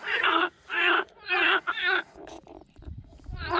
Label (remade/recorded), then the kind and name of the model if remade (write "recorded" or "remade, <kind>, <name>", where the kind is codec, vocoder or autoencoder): remade, vocoder, Vocos